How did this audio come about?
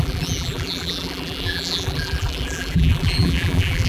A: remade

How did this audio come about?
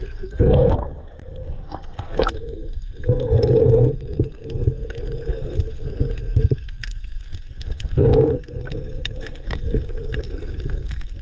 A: remade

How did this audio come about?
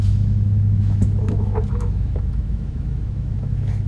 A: remade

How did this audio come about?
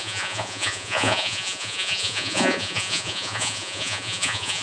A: remade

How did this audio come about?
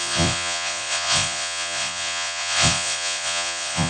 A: remade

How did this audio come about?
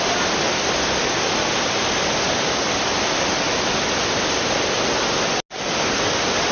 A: recorded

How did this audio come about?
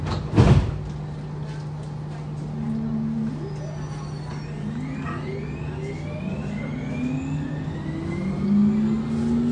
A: recorded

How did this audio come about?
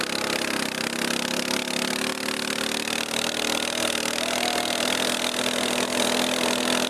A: recorded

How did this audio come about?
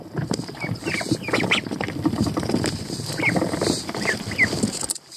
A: recorded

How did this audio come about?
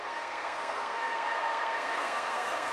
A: remade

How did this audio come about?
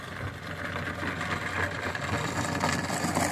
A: recorded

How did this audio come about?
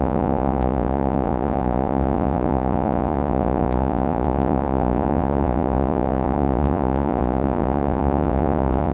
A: remade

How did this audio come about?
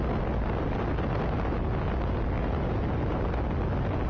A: recorded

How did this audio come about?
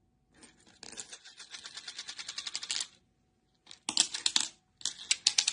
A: recorded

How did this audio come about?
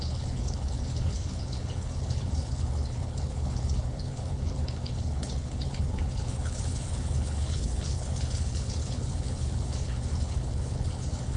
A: remade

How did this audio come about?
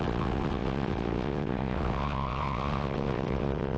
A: remade